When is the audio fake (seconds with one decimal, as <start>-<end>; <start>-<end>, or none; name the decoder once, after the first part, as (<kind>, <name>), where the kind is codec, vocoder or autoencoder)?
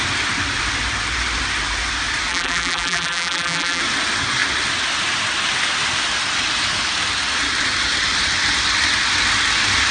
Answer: 2.3-3.8 (vocoder, BigVGAN v2)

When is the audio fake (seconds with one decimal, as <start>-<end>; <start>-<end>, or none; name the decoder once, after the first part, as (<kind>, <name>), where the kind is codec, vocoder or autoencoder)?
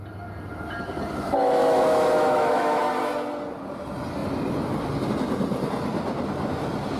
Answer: 1.6-2.8 (autoencoder, DAC-VAE)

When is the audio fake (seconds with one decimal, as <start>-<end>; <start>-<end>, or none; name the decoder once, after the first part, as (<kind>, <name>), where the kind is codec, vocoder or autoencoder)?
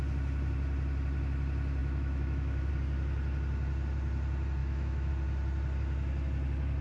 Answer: 1.8-2.7 (autoencoder, DAC-VAE); 4.6-5.1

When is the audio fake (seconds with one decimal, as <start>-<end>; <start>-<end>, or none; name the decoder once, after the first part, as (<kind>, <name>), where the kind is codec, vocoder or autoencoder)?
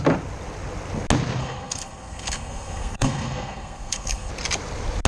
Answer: 1.4-4.3 (codec, SNAC)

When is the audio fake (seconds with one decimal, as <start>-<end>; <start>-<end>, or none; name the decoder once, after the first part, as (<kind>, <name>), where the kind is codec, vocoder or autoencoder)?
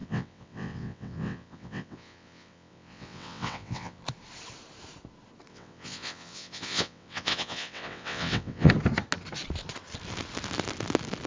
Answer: 0.0-4.0 (vocoder, WaveNeXt); 5.5-8.7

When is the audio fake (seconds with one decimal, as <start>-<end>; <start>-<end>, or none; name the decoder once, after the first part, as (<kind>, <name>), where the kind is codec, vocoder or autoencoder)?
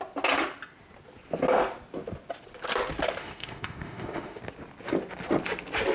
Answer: 3.2-4.4 (autoencoder, DAC-VAE)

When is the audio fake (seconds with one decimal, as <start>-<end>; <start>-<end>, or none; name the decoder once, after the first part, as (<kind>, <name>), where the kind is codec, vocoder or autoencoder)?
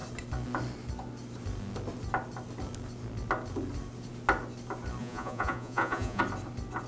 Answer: 5.0-6.2 (vocoder, Vocos)